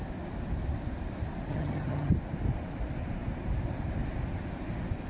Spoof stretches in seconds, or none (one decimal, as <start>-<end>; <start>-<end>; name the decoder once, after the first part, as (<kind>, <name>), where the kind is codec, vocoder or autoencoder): 1.5-2.1 (vocoder, HiFi-GAN)